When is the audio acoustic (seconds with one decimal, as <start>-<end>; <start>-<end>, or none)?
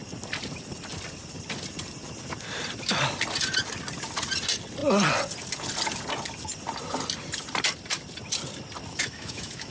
0.0-8.9